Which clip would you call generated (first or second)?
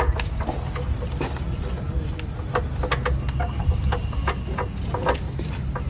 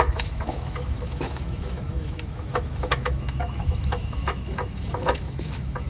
second